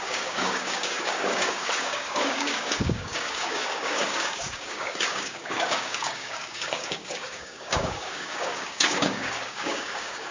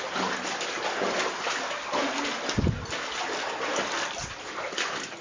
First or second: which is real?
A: second